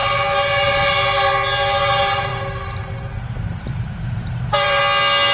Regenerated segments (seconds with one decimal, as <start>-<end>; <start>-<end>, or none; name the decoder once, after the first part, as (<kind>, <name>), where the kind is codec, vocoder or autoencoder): 2.3-4.8 (vocoder, BigVGAN v2)